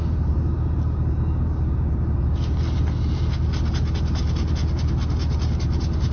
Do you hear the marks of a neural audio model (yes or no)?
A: no